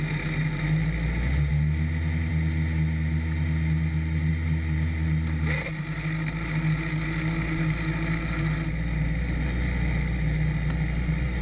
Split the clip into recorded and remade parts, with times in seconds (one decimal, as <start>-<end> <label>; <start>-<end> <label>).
0.0-11.4 recorded